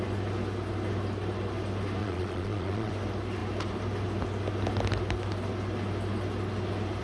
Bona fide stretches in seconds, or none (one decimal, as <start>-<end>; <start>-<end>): 0.0-2.0; 2.9-7.0